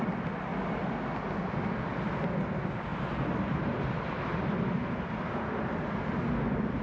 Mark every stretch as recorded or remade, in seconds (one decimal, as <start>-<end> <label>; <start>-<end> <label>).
0.0-6.8 recorded